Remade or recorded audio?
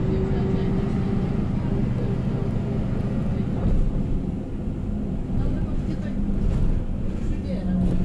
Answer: recorded